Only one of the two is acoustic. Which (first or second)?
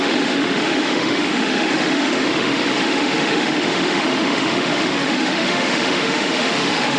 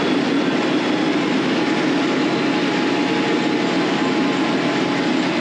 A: second